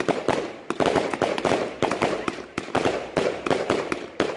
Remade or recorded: remade